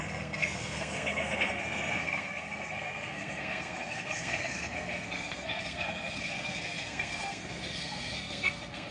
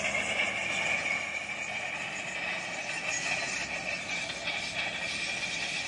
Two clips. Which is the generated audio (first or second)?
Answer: first